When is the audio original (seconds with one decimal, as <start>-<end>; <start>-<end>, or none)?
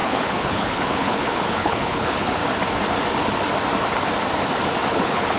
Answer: 2.4-4.9